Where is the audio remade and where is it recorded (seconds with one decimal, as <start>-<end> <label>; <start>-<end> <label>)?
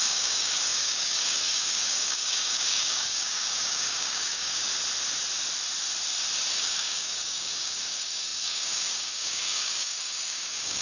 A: 0.0-4.7 remade; 4.7-6.5 recorded; 6.5-10.8 remade